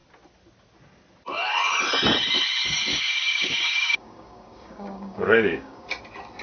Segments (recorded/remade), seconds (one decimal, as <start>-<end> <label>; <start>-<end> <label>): 0.0-2.9 recorded; 2.9-5.9 remade; 5.9-6.4 recorded